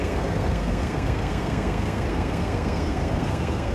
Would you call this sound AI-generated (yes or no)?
yes